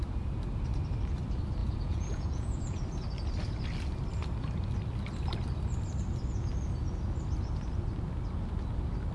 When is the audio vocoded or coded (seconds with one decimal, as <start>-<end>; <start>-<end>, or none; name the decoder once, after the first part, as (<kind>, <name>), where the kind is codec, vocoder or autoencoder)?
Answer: 1.6-2.8 (vocoder, Vocos)